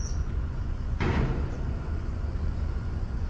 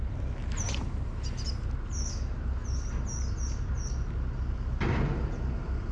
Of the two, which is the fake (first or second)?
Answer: first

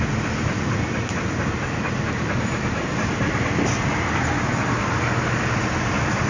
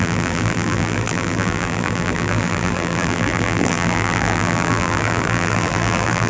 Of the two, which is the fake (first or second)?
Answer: second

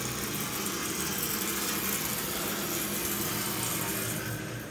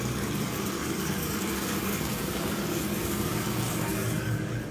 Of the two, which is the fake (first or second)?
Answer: second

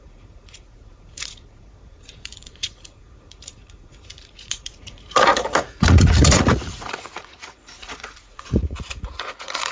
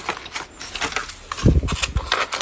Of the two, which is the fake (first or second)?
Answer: first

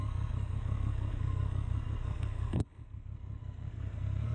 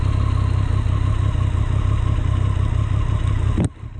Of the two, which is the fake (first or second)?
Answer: first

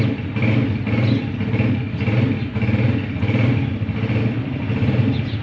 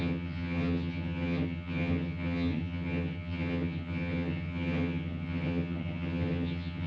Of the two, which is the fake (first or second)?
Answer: second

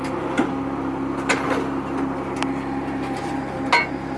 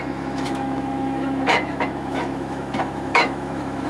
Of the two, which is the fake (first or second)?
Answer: second